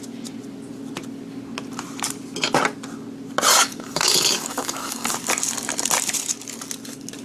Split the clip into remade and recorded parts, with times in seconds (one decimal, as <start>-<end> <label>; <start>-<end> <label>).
0.0-3.5 recorded; 3.5-5.1 remade; 5.1-7.2 recorded